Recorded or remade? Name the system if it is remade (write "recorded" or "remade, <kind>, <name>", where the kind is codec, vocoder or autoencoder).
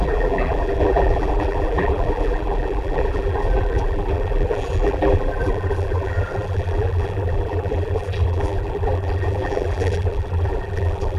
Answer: remade, vocoder, BigVGAN v2